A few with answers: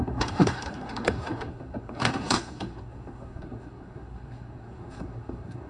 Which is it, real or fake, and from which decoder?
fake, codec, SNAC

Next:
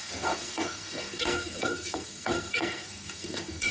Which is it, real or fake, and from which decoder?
fake, codec, SNAC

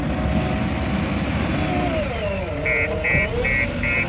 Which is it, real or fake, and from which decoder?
real